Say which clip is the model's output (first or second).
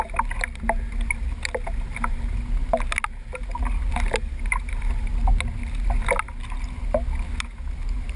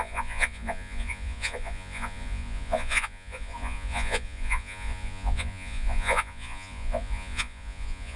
second